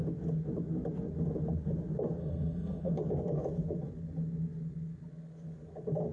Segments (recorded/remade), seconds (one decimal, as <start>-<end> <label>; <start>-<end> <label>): 0.0-2.2 recorded; 2.2-2.9 remade; 2.9-6.1 recorded